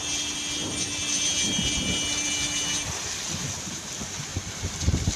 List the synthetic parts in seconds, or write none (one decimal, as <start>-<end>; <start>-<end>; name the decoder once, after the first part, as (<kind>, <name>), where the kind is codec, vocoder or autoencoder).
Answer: 4.3-5.2 (vocoder, BigVGAN v2)